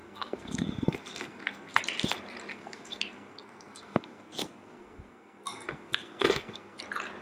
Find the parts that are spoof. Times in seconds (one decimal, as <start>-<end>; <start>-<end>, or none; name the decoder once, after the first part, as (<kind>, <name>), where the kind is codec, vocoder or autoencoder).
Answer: 0.0-1.8 (codec, SNAC); 2.5-6.8